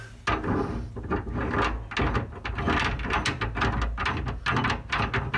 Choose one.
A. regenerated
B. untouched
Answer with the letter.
B